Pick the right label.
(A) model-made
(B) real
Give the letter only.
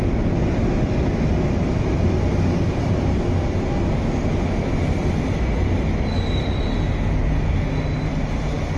B